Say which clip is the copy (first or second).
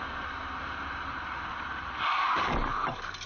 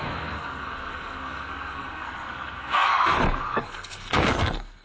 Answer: second